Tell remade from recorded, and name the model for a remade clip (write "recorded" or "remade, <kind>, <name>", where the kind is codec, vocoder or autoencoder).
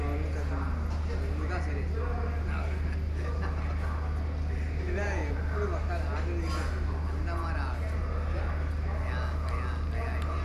recorded